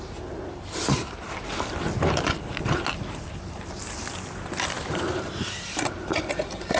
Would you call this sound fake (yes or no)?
no